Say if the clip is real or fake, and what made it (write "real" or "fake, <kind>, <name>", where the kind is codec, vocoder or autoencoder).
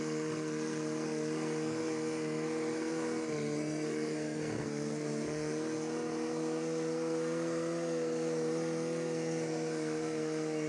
fake, codec, SNAC